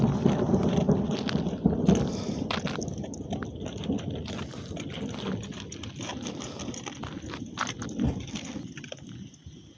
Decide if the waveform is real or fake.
real